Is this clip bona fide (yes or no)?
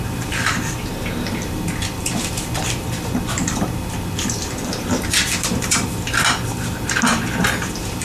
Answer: no